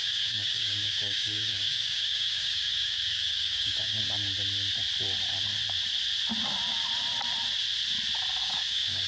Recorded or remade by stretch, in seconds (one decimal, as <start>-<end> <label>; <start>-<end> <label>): 0.0-4.0 remade; 4.0-8.4 recorded; 8.4-9.1 remade